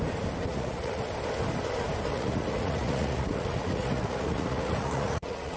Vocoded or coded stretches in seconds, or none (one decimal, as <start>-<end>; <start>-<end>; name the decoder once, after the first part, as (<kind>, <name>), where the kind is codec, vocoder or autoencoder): 0.4-1.1 (vocoder, Vocos); 2.1-5.6